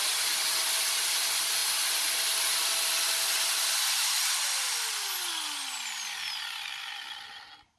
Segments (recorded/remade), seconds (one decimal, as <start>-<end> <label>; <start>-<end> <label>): 0.0-7.8 recorded